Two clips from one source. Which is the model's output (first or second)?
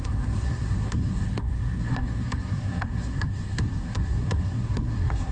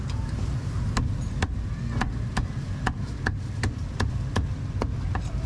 first